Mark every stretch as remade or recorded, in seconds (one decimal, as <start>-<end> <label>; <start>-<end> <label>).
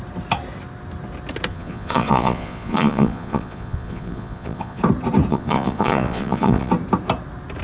0.0-1.5 recorded; 1.5-4.8 remade; 4.8-5.3 recorded; 5.3-6.7 remade; 6.7-7.6 recorded